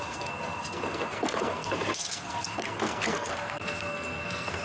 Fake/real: fake